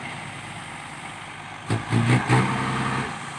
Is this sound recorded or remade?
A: recorded